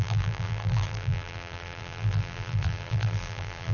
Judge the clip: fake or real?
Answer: fake